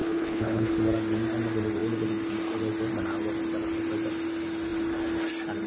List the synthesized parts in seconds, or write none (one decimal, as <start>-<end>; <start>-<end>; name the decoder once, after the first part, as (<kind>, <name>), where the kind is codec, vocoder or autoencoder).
0.0-0.7 (codec, HILCodec)